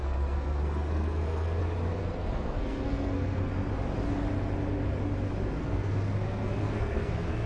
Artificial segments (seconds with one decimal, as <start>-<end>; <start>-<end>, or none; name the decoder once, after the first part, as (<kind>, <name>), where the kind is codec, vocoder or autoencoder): 0.0-1.6 (codec, SNAC); 2.0-3.5; 5.6-7.5